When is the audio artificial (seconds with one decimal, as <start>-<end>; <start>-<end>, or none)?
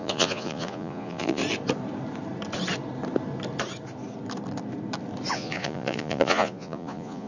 0.0-1.4; 5.3-7.3